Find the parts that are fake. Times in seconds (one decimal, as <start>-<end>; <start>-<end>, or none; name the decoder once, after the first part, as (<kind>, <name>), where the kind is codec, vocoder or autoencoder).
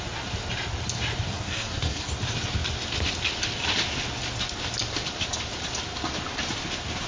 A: 1.3-2.1 (codec, SNAC)